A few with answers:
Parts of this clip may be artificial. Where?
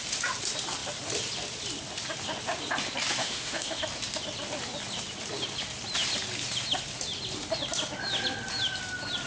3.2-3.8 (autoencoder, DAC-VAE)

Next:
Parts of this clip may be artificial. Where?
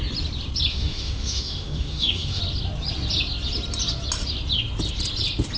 0.7-2.4 (autoencoder, DAC-VAE)